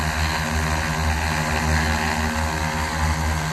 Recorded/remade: recorded